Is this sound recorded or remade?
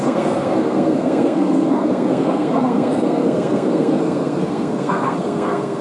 remade